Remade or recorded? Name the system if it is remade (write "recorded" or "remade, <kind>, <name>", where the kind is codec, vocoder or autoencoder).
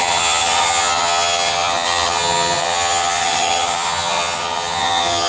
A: remade, vocoder, HiFi-GAN